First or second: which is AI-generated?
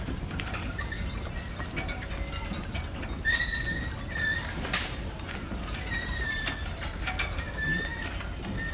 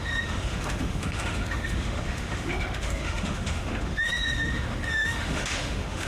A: second